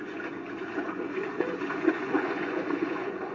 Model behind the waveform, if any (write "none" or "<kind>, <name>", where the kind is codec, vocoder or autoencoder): vocoder, Vocos